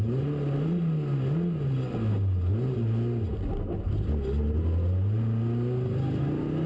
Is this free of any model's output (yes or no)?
yes